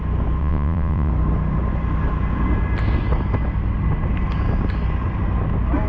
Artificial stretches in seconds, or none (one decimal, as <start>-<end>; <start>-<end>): 0.4-1.1